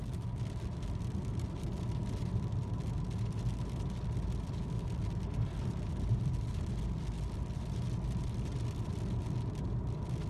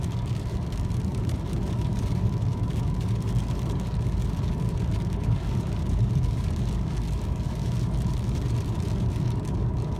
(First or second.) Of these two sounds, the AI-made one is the second